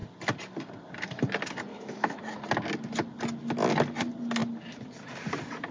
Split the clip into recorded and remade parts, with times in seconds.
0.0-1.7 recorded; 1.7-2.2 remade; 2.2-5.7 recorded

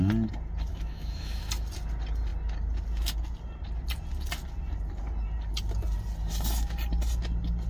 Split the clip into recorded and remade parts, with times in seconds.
0.0-0.7 recorded; 0.7-1.4 remade; 1.4-7.7 recorded

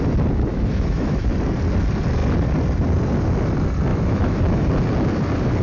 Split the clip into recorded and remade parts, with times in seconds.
0.0-0.5 recorded; 0.5-1.2 remade; 1.2-3.9 recorded; 3.9-4.7 remade; 4.7-5.6 recorded

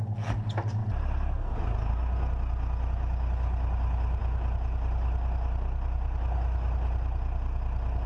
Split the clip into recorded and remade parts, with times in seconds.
0.0-8.1 recorded

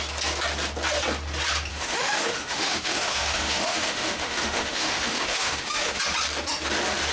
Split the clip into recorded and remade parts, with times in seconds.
0.0-1.7 recorded; 1.7-6.0 remade; 6.0-7.1 recorded

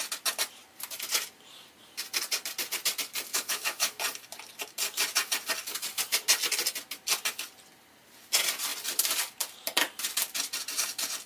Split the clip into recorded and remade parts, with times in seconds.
0.0-3.3 recorded; 3.3-4.0 remade; 4.0-11.3 recorded

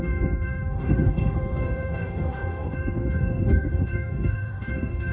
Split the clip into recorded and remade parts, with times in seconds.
0.0-5.1 remade